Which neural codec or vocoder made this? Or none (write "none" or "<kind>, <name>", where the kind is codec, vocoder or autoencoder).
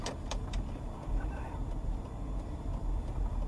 vocoder, BigVGAN v2